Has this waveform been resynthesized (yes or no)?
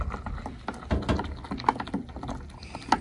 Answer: no